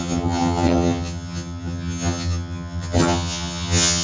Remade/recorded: remade